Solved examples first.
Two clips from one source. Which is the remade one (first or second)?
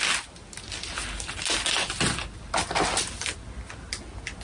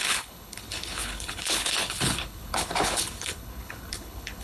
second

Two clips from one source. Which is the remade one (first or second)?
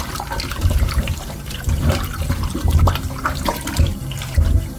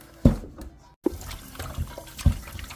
first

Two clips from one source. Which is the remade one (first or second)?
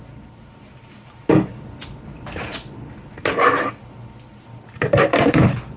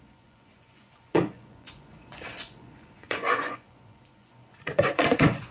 second